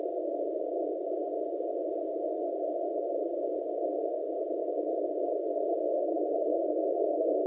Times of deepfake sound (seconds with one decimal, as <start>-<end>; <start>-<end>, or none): 0.0-1.2; 3.9-4.6; 5.2-7.5